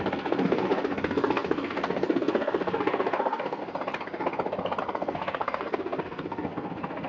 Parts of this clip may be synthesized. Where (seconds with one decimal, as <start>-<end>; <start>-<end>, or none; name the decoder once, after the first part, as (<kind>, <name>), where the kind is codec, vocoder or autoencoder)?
0.0-3.6 (codec, SNAC); 4.8-7.1